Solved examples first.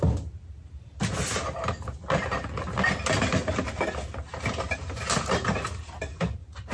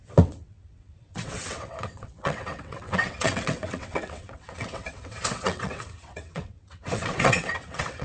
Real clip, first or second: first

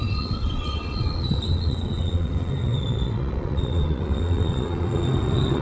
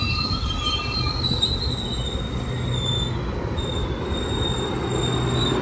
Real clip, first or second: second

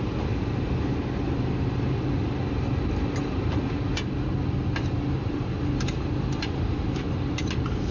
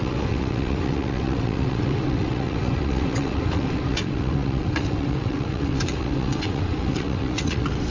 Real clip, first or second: first